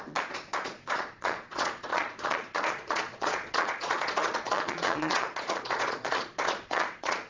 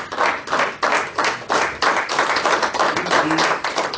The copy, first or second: first